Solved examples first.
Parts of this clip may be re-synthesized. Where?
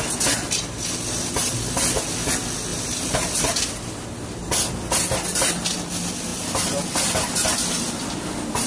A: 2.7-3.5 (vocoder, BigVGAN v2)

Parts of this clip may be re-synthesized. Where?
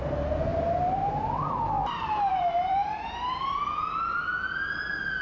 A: 0.5-3.6 (vocoder, BigVGAN v2)